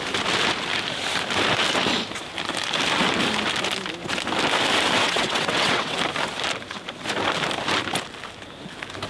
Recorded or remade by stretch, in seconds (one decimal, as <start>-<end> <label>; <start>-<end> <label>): 0.0-5.0 recorded; 5.0-6.0 remade; 6.0-9.1 recorded